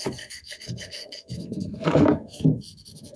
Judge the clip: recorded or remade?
remade